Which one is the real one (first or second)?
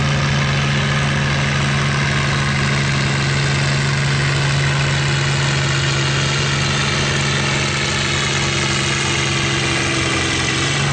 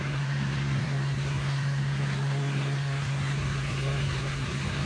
first